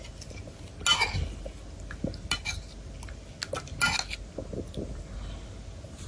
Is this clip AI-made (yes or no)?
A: no